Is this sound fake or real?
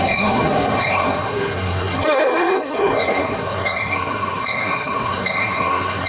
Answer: fake